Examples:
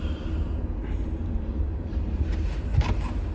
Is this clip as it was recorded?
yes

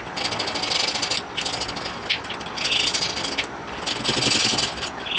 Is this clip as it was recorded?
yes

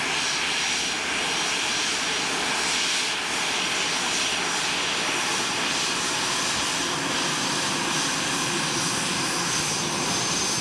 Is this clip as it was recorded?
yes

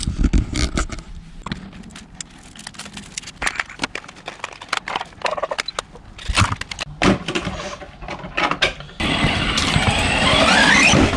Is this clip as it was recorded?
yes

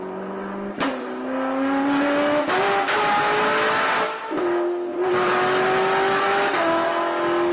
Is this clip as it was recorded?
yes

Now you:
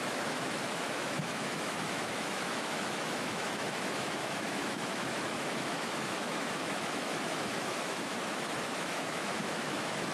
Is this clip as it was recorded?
no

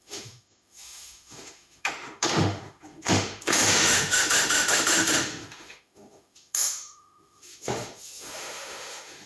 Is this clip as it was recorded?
no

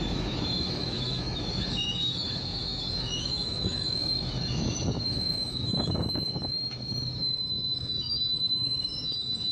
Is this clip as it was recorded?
no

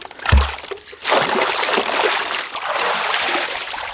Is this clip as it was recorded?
yes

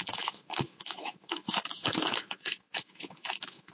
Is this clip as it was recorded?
no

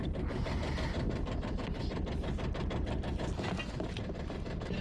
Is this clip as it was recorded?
yes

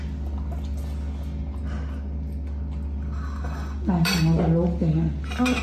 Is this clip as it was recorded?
yes